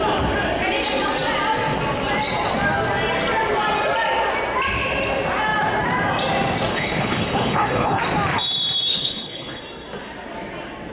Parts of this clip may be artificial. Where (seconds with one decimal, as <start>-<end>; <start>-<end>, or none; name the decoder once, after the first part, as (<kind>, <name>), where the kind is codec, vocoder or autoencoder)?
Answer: 6.7-8.0 (codec, HILCodec); 8.9-9.6